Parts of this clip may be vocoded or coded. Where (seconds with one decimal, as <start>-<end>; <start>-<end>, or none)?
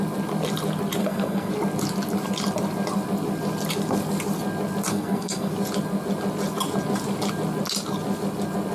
1.0-1.5; 4.9-5.5